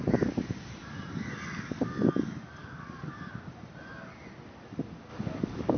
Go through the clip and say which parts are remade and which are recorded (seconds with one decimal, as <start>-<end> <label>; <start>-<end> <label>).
0.0-2.6 recorded; 2.6-3.1 remade; 3.1-5.1 recorded; 5.1-5.8 remade